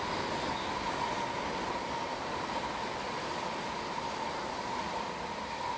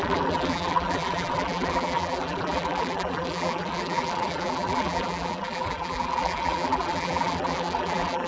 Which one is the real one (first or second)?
first